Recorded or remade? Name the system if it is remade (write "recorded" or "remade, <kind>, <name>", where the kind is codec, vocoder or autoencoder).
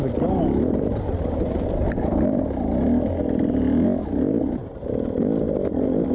recorded